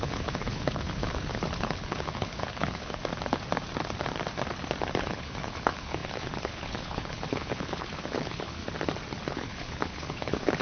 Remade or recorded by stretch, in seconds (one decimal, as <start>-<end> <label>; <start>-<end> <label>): 0.0-3.0 remade; 3.0-5.0 recorded; 5.0-8.6 remade; 8.6-9.3 recorded; 9.3-10.6 remade